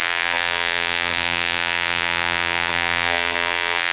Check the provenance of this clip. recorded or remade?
remade